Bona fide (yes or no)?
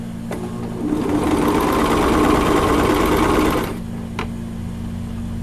yes